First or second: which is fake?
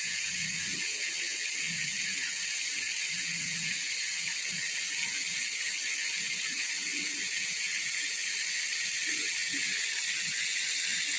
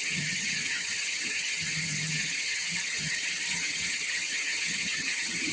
second